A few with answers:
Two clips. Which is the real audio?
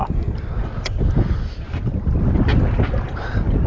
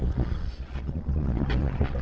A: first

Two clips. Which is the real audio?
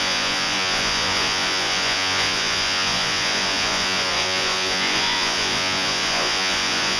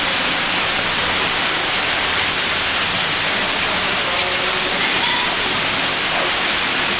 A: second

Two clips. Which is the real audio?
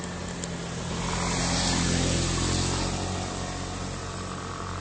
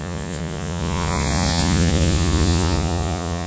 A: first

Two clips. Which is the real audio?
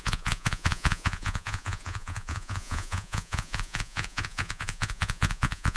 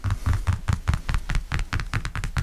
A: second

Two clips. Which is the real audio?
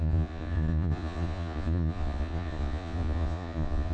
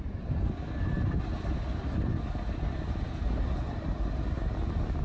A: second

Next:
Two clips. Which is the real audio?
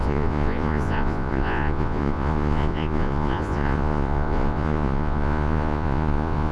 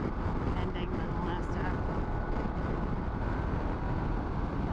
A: second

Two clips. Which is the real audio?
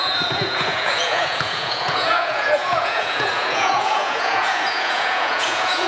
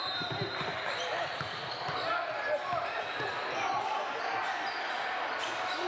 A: second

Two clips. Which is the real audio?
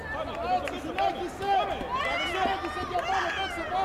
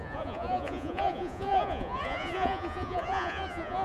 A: first